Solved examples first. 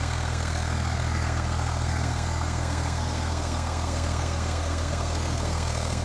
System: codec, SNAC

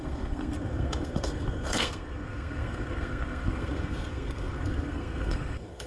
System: codec, SNAC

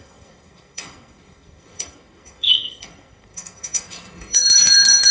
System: codec, SNAC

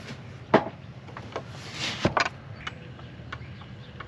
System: none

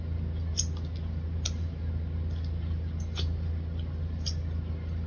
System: none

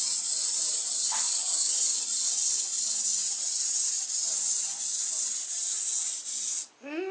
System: none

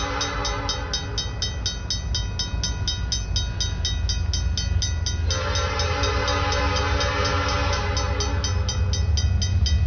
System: none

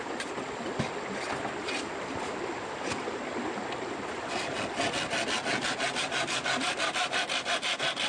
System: none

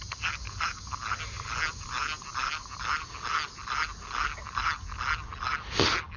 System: none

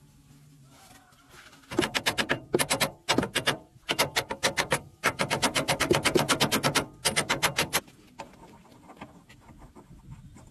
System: none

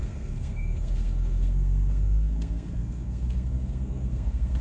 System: codec, SNAC